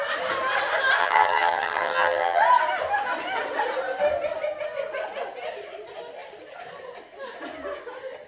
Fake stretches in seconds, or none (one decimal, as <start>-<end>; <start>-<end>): 1.0-2.4